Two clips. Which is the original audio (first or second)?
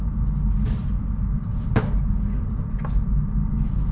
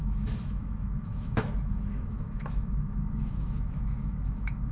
first